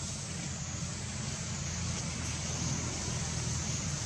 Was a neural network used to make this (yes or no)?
no